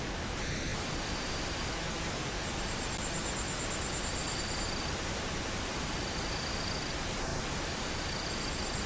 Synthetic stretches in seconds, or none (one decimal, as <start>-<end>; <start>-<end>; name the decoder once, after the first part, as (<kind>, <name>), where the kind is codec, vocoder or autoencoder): none